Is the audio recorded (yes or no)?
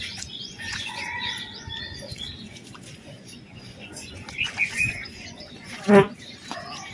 no